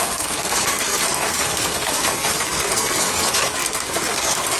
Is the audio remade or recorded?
remade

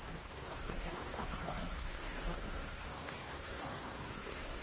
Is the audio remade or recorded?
remade